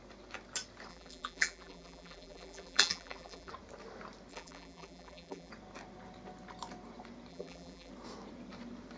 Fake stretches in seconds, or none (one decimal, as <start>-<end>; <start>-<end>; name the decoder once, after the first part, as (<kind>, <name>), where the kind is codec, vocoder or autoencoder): 0.9-3.5 (vocoder, BigVGAN v2); 4.3-5.5; 7.3-7.9